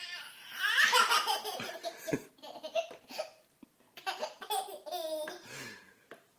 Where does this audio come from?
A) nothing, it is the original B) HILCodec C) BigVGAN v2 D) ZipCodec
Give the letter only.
C